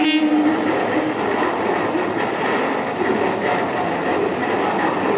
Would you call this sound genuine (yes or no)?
yes